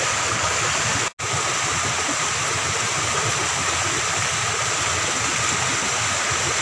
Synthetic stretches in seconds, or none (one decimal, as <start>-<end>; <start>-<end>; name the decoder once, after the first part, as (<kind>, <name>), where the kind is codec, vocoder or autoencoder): none